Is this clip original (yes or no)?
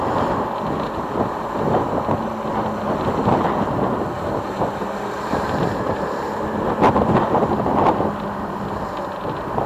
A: yes